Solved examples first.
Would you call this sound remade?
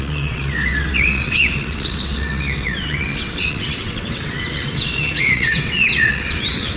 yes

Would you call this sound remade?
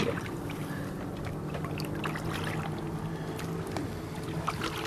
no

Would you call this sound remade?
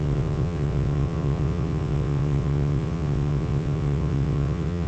yes